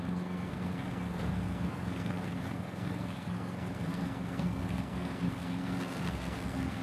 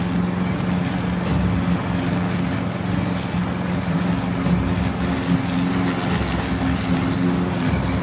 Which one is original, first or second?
second